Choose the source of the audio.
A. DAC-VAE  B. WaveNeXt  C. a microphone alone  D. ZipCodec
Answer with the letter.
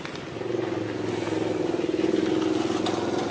C